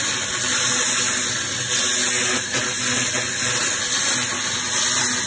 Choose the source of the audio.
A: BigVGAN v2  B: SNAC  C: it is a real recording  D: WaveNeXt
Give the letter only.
C